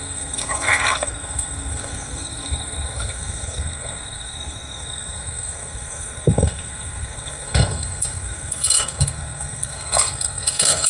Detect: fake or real fake